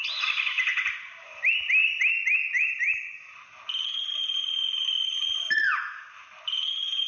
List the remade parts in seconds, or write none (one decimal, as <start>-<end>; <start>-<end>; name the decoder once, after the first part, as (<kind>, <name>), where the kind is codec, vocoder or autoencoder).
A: none